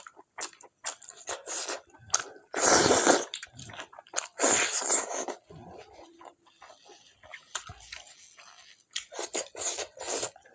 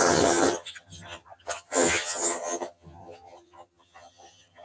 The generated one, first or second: second